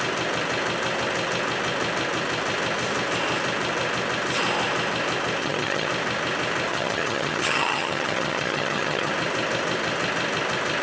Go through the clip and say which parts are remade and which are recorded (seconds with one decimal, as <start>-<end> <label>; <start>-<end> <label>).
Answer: 0.0-5.4 recorded; 5.4-5.9 remade; 5.9-6.7 recorded; 6.7-9.1 remade; 9.1-10.8 recorded